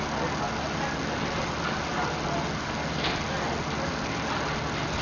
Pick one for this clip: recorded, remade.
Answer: recorded